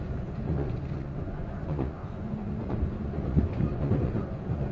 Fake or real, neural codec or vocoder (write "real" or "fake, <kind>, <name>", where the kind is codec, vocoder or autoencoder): fake, vocoder, Vocos